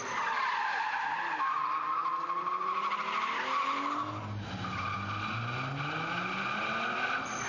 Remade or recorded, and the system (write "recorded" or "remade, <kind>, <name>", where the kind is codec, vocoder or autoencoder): recorded